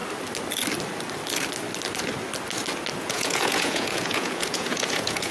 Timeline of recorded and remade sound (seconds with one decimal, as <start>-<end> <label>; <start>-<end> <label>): 0.0-3.0 recorded; 3.0-5.3 remade